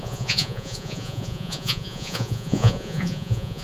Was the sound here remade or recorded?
remade